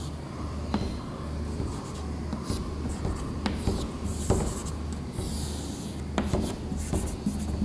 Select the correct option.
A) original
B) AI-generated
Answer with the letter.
A